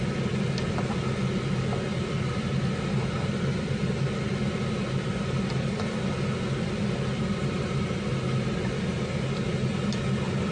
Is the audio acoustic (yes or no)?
yes